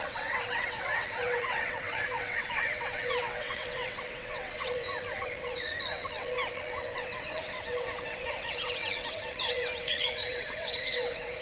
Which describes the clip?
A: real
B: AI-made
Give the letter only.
B